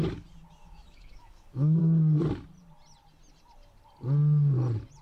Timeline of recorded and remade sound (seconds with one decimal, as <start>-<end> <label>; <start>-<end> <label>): 0.0-0.6 recorded; 0.6-1.8 remade; 1.8-5.0 recorded